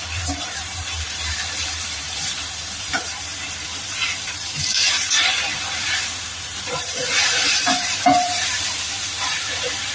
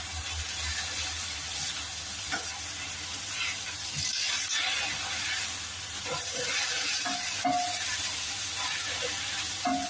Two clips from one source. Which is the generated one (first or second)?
first